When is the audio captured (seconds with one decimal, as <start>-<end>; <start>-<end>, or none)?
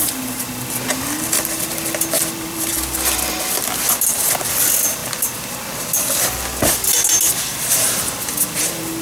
0.0-7.5; 8.1-9.0